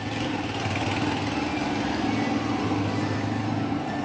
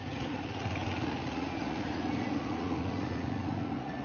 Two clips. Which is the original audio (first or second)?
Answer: first